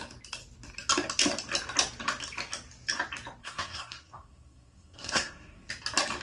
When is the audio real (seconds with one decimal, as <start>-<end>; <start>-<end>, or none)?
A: 0.0-3.4; 5.7-6.2